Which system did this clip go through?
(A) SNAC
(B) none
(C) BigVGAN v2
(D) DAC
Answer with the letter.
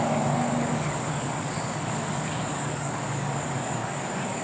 D